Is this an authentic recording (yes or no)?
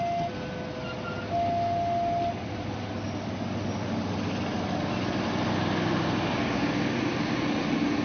yes